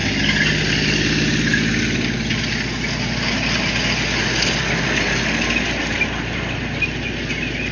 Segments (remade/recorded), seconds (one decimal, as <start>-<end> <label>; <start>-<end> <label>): 0.0-7.7 recorded